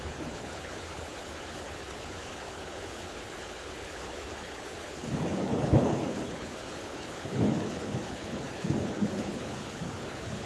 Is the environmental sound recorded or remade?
remade